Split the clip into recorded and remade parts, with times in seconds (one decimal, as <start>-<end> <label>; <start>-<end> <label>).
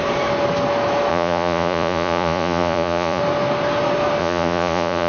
0.0-1.1 recorded; 1.1-3.2 remade; 3.2-4.2 recorded; 4.2-5.1 remade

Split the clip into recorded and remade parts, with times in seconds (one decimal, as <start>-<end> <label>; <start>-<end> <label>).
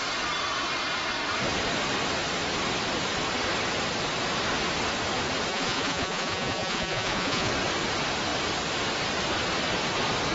0.0-5.5 recorded; 5.5-7.5 remade; 7.5-10.3 recorded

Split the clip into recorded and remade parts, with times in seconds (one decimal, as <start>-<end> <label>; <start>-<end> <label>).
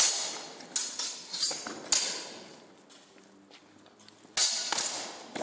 0.0-5.4 recorded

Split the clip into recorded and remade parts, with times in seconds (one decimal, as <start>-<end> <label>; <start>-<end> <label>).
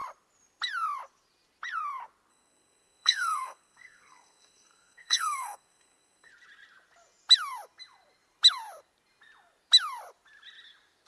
0.0-2.3 recorded; 2.3-6.3 remade; 6.3-11.1 recorded